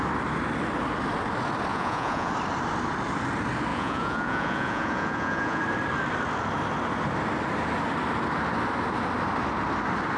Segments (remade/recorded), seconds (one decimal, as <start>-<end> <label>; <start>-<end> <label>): 0.0-1.7 recorded; 1.7-2.3 remade; 2.3-3.7 recorded; 3.7-5.6 remade; 5.6-10.2 recorded